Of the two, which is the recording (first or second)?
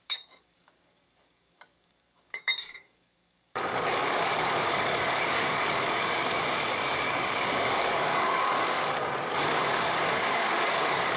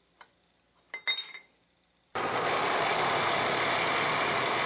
second